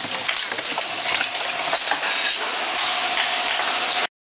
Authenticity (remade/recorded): recorded